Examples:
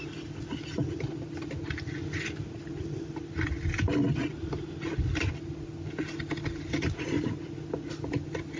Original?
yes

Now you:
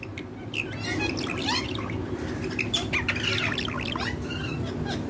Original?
no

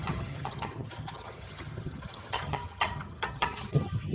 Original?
no